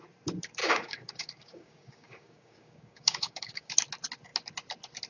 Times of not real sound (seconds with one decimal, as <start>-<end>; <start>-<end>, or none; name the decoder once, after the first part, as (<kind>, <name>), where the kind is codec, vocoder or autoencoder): 0.6-3.7 (codec, DAC)